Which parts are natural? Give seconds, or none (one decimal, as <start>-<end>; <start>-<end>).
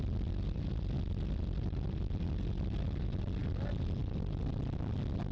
0.0-3.4; 4.4-5.3